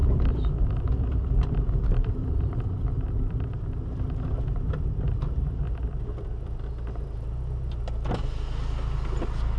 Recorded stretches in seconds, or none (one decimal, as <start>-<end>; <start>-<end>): 3.9-9.6